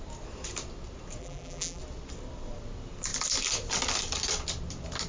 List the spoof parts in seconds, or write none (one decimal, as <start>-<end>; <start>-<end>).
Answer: 1.2-1.8